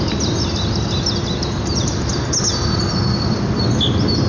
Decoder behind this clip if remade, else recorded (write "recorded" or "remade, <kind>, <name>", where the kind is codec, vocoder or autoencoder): recorded